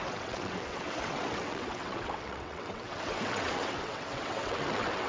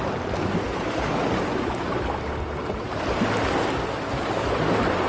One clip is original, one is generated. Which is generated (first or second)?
first